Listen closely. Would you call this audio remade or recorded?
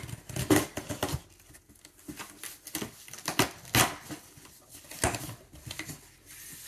recorded